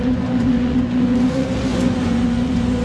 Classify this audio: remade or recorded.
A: remade